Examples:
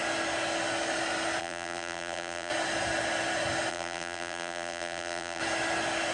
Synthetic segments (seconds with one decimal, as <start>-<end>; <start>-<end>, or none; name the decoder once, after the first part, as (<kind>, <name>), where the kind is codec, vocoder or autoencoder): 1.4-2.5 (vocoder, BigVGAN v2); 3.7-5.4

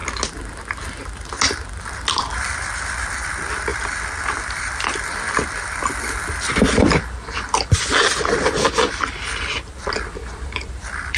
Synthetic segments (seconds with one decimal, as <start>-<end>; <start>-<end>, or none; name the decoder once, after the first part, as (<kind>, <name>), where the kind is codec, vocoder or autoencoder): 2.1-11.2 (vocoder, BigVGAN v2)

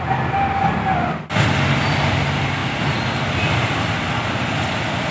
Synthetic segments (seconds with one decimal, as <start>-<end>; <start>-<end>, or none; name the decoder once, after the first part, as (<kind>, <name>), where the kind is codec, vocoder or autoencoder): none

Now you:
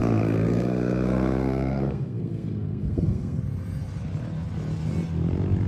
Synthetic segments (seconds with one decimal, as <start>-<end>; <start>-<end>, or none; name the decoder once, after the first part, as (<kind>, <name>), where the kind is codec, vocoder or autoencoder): 0.0-3.4 (codec, SNAC)

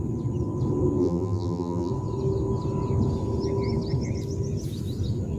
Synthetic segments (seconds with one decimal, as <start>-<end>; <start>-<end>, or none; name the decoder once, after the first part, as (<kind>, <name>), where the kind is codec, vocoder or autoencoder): 1.0-1.9 (vocoder, BigVGAN v2)

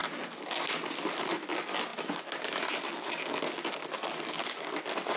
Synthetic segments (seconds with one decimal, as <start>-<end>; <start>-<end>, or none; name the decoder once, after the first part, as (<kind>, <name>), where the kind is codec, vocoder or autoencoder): none

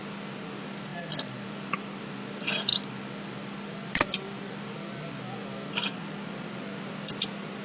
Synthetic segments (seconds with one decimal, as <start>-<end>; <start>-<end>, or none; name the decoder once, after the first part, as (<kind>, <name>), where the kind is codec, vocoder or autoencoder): 0.9-2.0 (vocoder, BigVGAN v2); 2.7-6.5